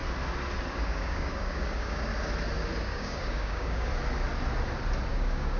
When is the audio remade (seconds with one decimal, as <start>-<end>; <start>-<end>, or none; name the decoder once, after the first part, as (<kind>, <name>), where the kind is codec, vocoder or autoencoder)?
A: 0.7-2.1 (codec, DAC); 2.8-3.9; 5.1-5.6